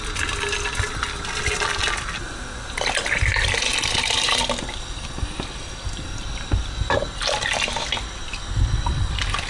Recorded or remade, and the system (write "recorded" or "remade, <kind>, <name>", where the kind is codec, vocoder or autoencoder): recorded